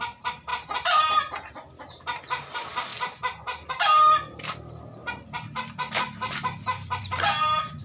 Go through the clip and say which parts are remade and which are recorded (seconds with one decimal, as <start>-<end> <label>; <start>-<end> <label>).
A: 0.0-2.9 remade; 2.9-5.9 recorded; 5.9-7.8 remade

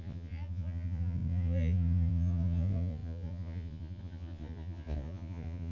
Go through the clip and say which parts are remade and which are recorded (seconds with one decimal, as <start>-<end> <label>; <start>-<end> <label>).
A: 0.0-5.7 remade

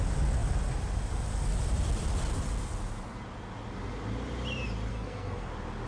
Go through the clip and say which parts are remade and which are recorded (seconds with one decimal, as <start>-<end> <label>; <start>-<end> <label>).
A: 0.0-4.9 recorded; 4.9-5.5 remade; 5.5-5.9 recorded

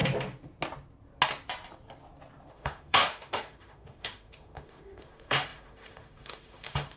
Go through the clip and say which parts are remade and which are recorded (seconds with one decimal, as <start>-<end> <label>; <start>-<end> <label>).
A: 0.0-2.5 recorded; 2.5-7.0 remade

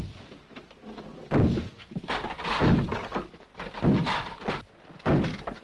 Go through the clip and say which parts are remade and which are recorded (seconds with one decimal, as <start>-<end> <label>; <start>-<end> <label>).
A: 0.0-3.5 recorded; 3.5-4.5 remade; 4.5-5.6 recorded

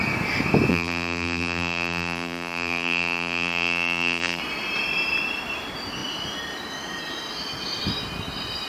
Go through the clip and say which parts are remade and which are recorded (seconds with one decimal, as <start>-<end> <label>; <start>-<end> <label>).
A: 0.0-0.7 recorded; 0.7-4.4 remade; 4.4-8.7 recorded

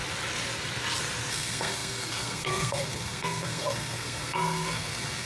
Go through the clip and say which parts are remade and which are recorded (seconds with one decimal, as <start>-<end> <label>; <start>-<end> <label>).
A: 0.0-1.3 recorded; 1.3-5.3 remade